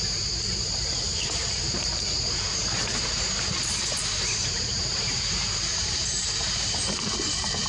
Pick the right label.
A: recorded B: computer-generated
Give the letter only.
B